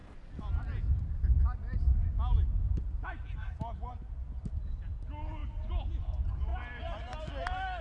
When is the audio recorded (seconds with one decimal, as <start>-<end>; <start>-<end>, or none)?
0.0-7.8